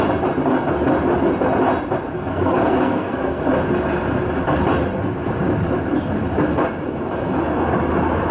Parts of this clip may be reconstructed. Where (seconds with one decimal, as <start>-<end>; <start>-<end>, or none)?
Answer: 2.3-3.4